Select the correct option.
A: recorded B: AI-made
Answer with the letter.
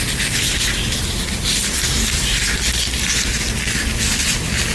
A